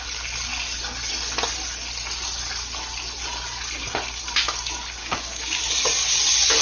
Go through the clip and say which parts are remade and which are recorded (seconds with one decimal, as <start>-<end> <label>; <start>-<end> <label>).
0.0-5.0 recorded; 5.0-5.6 remade; 5.6-6.6 recorded